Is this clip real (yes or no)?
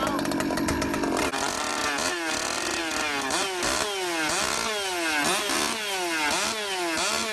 yes